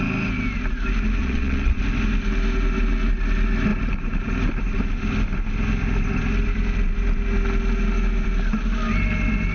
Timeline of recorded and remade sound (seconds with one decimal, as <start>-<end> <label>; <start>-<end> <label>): 0.0-1.2 recorded; 1.2-1.8 remade; 1.8-9.5 recorded